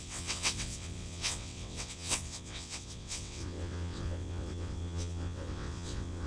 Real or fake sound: fake